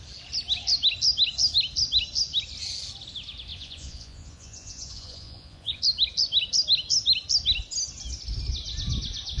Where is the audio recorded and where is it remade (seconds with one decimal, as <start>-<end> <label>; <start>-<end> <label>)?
0.0-3.5 recorded; 3.5-5.8 remade; 5.8-9.4 recorded